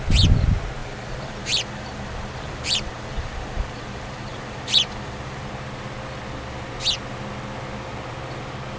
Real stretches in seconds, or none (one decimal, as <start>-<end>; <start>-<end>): 0.0-0.8; 5.5-8.8